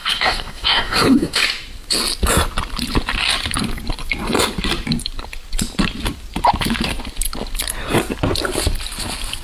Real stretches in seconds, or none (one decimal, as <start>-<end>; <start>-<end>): 1.4-9.4